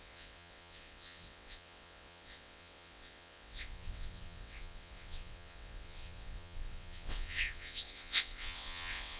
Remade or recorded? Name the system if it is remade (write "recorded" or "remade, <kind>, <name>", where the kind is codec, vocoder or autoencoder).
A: remade, vocoder, WaveNeXt